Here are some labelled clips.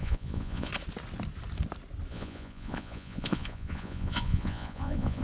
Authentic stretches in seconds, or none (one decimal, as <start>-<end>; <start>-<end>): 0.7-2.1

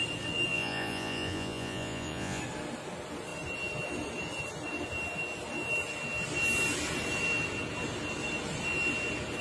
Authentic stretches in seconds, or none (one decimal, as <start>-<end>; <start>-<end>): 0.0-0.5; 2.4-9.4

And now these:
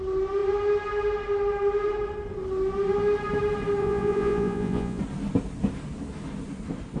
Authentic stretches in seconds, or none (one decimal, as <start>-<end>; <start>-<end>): 0.0-3.8; 5.0-7.0